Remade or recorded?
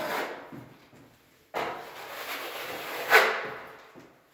recorded